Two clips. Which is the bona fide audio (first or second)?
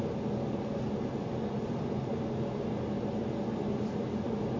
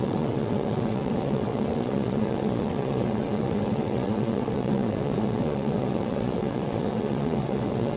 first